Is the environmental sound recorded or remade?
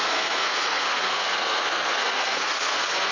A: remade